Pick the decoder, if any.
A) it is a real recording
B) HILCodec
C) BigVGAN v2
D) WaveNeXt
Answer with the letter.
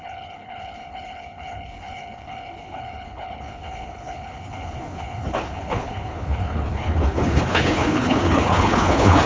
B